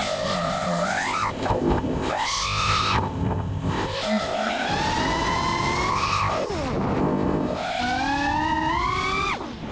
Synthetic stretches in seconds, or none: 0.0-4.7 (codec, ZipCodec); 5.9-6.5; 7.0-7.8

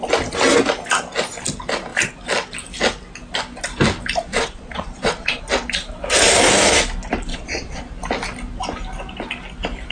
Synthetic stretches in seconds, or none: 4.3-5.4 (vocoder, Vocos); 7.3-7.8

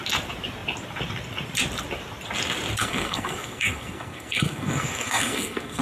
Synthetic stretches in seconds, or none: 2.8-5.8 (codec, SNAC)